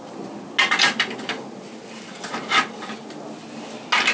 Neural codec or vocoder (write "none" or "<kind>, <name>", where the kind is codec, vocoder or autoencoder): none